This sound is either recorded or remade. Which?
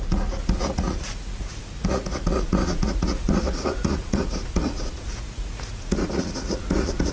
remade